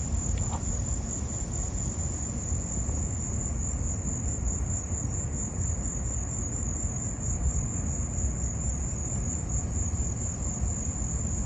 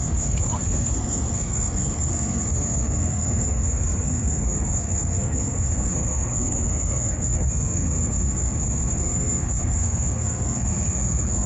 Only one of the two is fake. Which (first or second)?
second